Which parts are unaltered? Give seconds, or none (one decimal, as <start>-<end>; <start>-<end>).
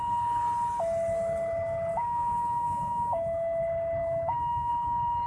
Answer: 0.0-1.9; 3.6-4.0; 4.7-5.3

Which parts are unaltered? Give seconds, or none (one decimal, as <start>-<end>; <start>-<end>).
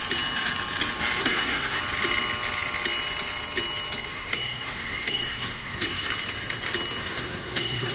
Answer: 0.0-1.2; 1.8-4.1; 6.1-7.0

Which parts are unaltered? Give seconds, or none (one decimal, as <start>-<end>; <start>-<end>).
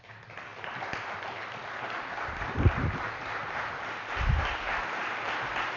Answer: 0.0-5.8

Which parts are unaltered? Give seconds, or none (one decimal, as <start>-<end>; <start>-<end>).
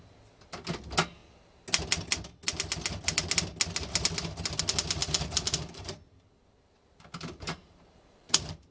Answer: 0.0-5.0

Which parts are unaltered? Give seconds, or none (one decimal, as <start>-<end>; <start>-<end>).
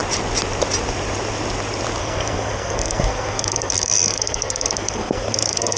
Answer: 0.0-2.0